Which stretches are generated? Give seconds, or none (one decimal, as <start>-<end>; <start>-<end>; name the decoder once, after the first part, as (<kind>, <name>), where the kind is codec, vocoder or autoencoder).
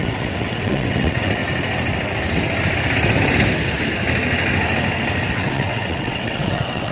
0.0-1.4 (vocoder, WaveNeXt); 5.3-6.9